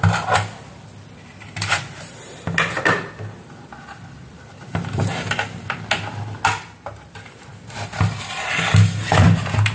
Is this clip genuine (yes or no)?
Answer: yes